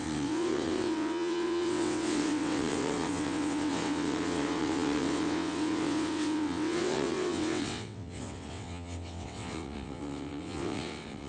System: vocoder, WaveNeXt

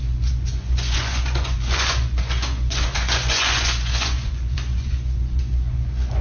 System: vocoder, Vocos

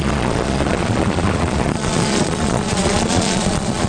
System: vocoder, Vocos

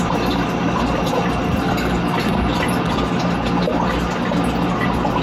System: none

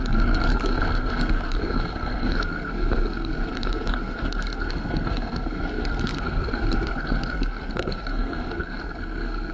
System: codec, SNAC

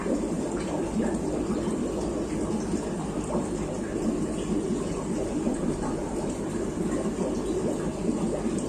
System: none